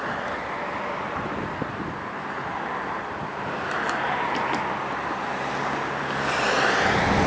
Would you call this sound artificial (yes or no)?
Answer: no